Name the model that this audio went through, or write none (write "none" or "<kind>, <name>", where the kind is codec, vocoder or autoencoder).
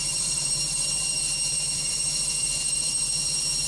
vocoder, BigVGAN v2